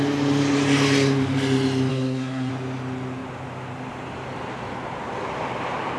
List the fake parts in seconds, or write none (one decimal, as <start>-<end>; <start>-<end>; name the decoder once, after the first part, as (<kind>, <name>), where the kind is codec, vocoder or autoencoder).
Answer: 1.9-2.5 (codec, SNAC)